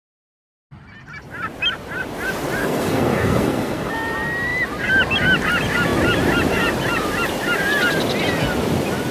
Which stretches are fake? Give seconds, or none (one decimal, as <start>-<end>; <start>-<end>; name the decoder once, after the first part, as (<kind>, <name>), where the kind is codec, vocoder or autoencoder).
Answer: 2.6-3.9 (codec, SNAC)